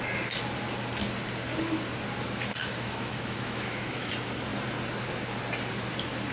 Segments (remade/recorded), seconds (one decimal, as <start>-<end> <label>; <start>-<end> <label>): 0.0-2.6 recorded; 2.6-4.1 remade; 4.1-6.3 recorded